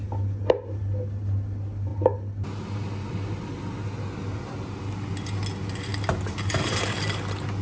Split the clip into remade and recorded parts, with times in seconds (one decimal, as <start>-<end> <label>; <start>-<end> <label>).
0.0-7.6 recorded